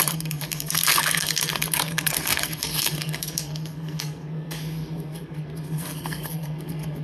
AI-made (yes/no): yes